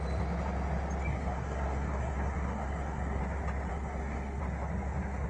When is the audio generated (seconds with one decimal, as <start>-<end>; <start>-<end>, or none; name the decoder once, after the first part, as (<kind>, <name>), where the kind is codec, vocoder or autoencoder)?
1.1-3.2 (codec, SNAC); 3.7-4.4